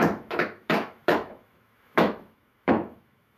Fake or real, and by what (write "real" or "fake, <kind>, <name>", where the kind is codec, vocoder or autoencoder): fake, autoencoder, DAC-VAE